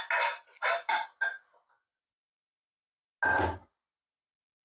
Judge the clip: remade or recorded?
recorded